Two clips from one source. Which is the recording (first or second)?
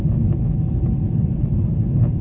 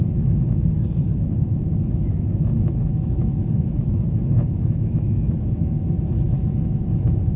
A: first